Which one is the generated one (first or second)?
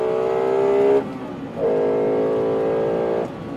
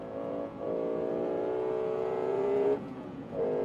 second